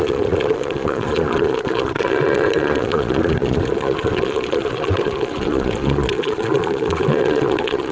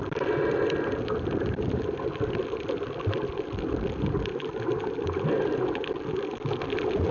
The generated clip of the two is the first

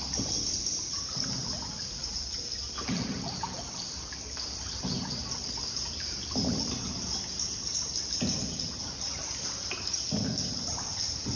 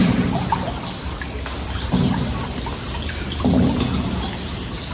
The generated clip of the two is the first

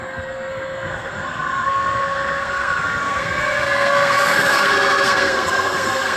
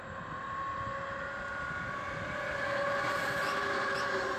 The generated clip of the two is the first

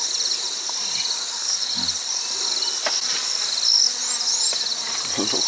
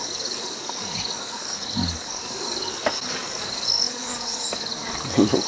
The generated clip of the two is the second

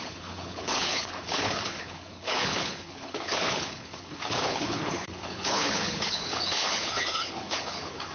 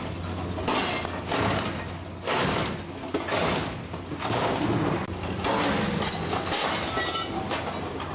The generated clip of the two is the first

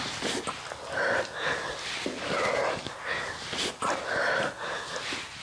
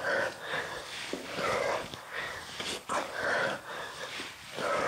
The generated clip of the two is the second